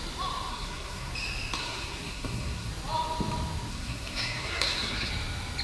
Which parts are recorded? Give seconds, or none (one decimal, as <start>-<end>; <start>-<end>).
0.0-0.5; 1.1-1.6; 2.7-3.7; 5.1-5.6